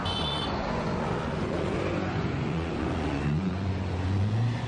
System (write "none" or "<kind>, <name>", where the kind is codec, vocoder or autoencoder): vocoder, Vocos